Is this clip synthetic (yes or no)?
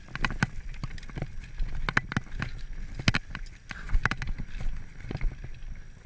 no